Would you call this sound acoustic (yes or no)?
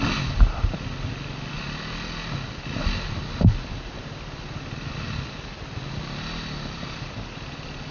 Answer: yes